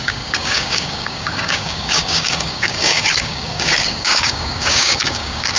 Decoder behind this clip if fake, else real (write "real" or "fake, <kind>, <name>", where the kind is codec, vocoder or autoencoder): fake, codec, DAC